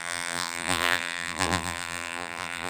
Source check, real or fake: fake